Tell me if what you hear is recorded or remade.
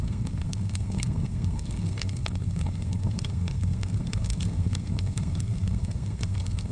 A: remade